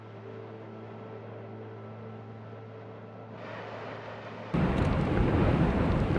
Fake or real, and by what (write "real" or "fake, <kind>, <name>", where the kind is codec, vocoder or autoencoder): real